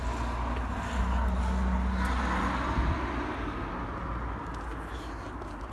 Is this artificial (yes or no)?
no